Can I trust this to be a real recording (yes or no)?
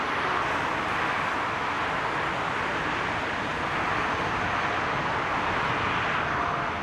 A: yes